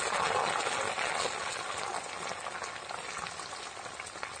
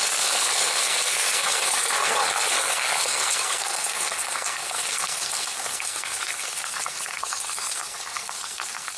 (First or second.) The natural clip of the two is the first